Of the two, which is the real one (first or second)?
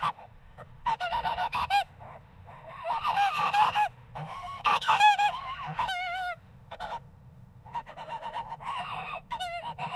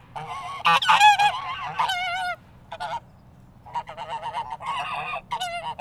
second